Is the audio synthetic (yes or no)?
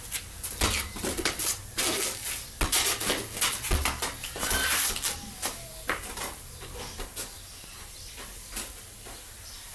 no